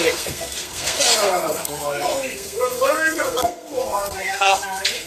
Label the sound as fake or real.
fake